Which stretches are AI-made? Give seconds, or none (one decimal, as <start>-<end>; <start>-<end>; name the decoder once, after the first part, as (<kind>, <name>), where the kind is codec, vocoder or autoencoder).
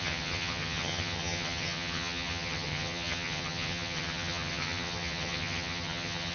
0.0-6.3 (vocoder, HiFi-GAN)